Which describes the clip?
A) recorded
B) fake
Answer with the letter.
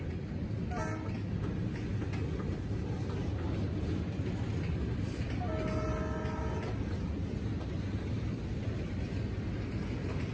A